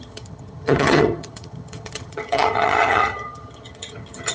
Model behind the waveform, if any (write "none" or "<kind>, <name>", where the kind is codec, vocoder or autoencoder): vocoder, HiFi-GAN